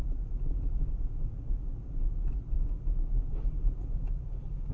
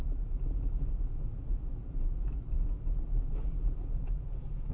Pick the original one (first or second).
first